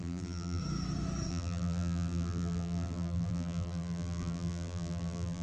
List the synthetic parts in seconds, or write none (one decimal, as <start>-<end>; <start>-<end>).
0.0-0.6; 1.3-5.4